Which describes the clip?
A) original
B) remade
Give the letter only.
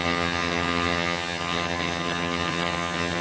B